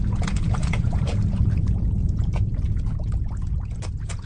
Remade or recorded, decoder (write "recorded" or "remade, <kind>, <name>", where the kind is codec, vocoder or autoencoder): remade, vocoder, Vocos